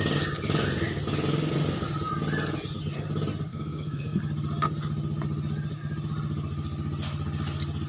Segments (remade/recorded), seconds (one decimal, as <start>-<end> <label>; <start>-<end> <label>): 0.0-3.5 recorded; 3.5-4.2 remade; 4.2-7.9 recorded